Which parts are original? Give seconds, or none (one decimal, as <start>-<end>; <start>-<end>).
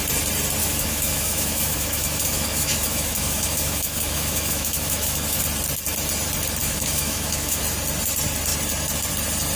0.0-0.6; 5.4-6.6; 7.6-9.6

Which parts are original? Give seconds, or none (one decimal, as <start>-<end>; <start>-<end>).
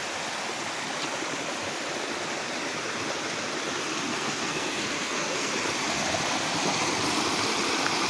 0.0-4.1; 5.5-8.1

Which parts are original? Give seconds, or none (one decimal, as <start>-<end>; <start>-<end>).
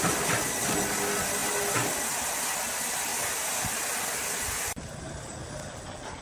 0.0-6.2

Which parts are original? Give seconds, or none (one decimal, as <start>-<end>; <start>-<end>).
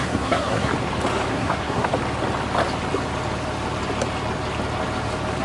0.7-1.3; 1.9-5.4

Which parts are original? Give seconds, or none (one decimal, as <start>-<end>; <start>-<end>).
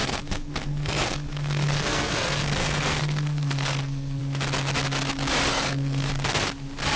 4.2-5.5; 6.1-7.0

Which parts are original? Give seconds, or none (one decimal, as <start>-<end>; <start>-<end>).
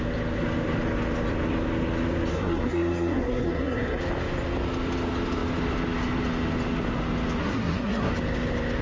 0.0-2.3; 4.0-7.4; 8.1-8.8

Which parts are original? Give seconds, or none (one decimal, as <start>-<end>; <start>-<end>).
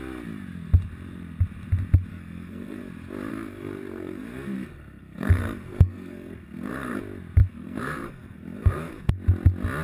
0.0-2.1; 2.8-3.3; 7.0-7.4; 9.1-9.8